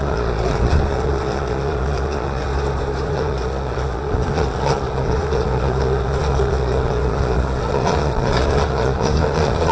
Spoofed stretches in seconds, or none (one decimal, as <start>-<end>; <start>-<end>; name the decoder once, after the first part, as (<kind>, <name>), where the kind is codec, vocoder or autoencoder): 0.0-2.5 (vocoder, Vocos); 3.1-9.7